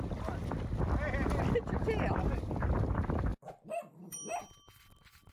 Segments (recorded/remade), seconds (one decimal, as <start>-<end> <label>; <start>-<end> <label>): 0.0-3.3 recorded; 3.3-4.2 remade; 4.2-5.3 recorded